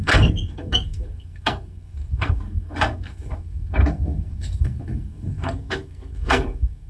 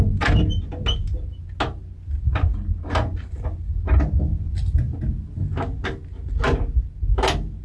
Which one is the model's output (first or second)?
first